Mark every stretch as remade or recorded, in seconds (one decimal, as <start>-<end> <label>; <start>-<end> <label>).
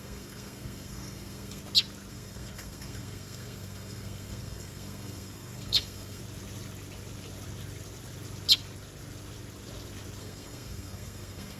0.0-1.6 remade; 1.6-2.1 recorded; 2.1-6.2 remade; 6.2-10.2 recorded; 10.2-11.6 remade